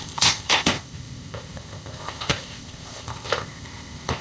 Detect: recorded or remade remade